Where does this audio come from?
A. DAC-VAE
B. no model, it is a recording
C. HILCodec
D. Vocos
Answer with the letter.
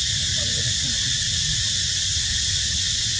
D